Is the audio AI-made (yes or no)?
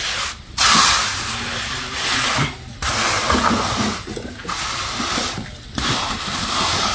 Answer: no